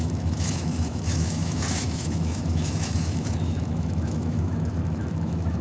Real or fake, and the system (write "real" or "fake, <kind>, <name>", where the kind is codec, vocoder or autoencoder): fake, autoencoder, DAC-VAE